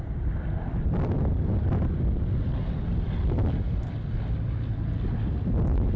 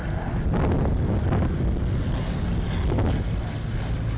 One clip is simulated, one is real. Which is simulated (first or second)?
first